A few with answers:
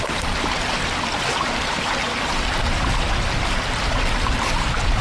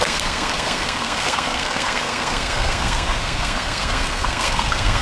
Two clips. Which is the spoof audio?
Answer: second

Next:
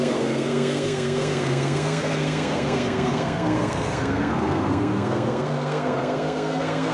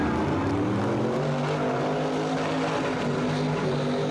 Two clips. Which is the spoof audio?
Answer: first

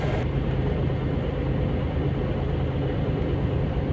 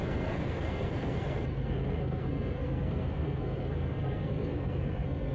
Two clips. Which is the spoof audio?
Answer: second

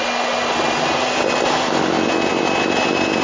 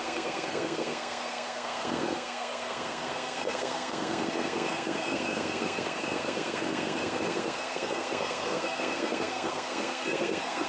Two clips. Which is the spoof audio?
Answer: second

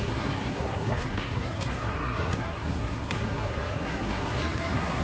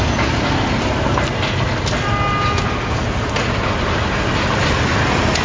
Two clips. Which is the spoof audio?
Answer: first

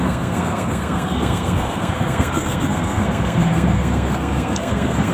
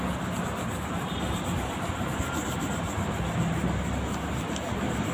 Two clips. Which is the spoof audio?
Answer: first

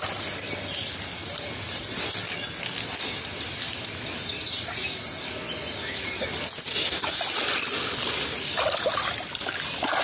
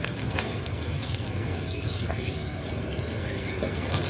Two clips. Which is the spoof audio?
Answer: second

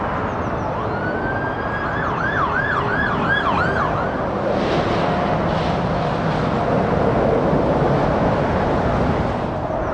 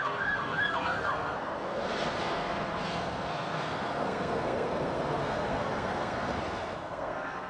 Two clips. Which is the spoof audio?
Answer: second